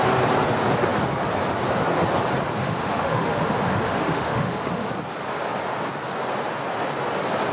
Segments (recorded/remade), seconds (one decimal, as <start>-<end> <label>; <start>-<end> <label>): 0.0-2.6 recorded; 2.6-4.9 remade; 4.9-7.5 recorded